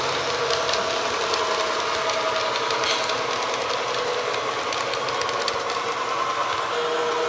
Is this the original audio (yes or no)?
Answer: yes